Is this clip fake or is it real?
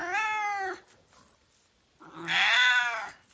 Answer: real